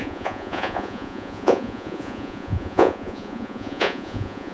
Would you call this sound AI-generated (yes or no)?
yes